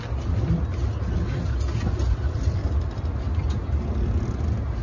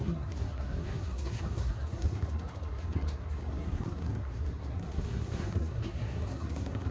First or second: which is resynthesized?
second